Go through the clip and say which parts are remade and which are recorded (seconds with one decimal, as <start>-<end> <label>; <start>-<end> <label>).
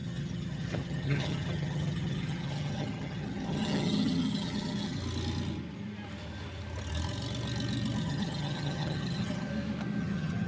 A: 0.0-5.0 remade; 5.0-8.0 recorded; 8.0-9.5 remade; 9.5-10.0 recorded; 10.0-10.5 remade